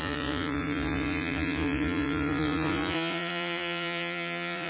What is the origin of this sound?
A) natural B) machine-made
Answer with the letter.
B